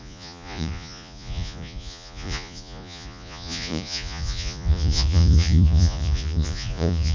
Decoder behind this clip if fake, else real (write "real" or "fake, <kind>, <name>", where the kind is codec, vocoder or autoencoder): fake, vocoder, Vocos